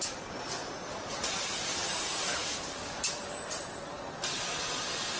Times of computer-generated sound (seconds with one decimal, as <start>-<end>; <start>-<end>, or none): 2.3-2.9